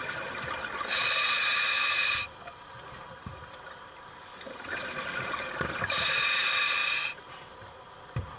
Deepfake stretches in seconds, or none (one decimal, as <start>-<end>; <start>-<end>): 0.9-1.5